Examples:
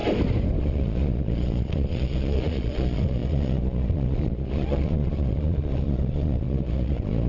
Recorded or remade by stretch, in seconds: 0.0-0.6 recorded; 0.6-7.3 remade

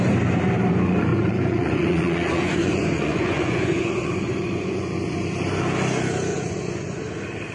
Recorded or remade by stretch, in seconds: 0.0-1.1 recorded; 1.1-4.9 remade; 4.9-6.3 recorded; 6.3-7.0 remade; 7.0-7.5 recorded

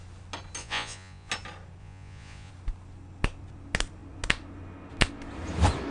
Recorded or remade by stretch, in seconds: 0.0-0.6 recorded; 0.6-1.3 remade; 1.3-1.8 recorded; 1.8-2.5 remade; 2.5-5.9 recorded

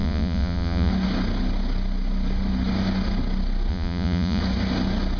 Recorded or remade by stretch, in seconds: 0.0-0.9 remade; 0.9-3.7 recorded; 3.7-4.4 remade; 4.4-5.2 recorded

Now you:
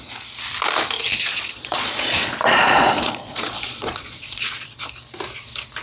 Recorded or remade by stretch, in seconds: 0.0-1.3 recorded; 1.3-4.8 remade; 4.8-5.8 recorded